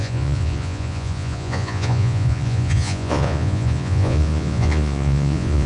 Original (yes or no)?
no